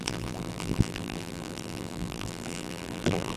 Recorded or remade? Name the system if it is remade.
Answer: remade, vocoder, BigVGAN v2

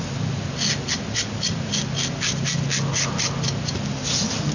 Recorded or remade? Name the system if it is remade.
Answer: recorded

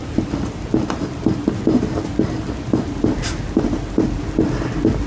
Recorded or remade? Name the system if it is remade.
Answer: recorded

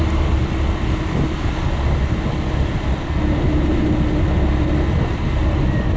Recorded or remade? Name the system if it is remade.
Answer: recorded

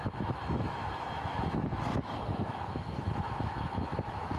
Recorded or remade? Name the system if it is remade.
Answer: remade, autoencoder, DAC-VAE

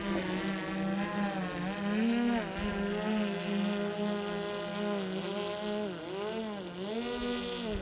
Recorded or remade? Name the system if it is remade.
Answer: recorded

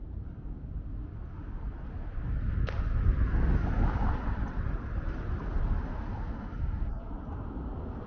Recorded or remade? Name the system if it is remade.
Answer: recorded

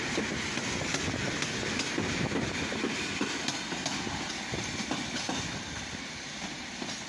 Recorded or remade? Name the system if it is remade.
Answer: recorded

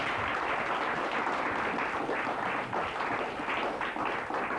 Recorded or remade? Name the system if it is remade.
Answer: recorded